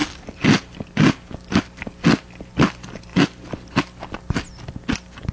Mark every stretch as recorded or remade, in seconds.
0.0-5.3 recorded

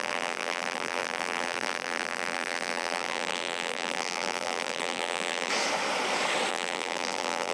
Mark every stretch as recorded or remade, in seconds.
0.0-5.5 remade; 5.5-6.5 recorded; 6.5-7.5 remade

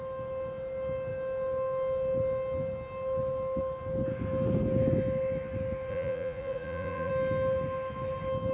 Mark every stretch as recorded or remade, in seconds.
0.0-5.9 recorded; 5.9-7.1 remade; 7.1-8.5 recorded

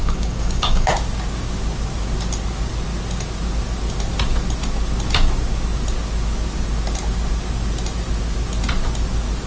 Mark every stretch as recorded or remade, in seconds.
0.0-0.9 remade; 0.9-9.5 recorded